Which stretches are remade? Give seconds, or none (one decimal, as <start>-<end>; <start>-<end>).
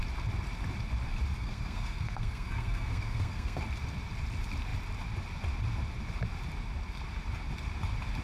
1.4-3.6